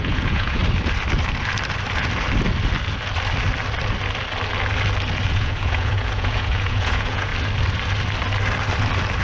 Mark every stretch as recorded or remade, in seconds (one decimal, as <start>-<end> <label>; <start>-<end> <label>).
0.0-0.6 remade; 0.6-5.3 recorded; 5.3-7.3 remade; 7.3-9.2 recorded